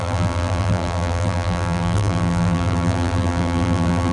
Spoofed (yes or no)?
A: yes